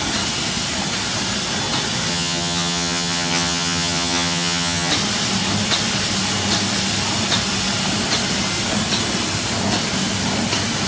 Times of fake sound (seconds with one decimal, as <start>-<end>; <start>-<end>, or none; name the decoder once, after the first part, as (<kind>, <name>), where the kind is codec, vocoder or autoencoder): 2.1-4.9 (vocoder, HiFi-GAN)